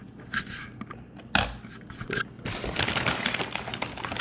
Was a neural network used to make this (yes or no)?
no